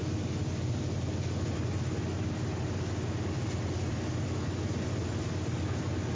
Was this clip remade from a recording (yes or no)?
no